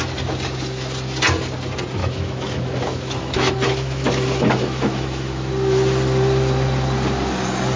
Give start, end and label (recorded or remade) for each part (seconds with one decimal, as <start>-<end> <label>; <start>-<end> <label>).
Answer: 0.0-2.0 recorded; 2.0-5.5 remade; 5.5-7.8 recorded